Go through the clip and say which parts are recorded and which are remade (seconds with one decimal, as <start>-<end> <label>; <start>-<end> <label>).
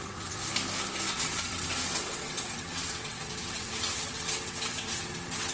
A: 0.0-0.4 remade; 0.4-1.1 recorded; 1.1-5.5 remade